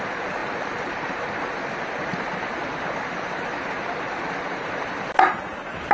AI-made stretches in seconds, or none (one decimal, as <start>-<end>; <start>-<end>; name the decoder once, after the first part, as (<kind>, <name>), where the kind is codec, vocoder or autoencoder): none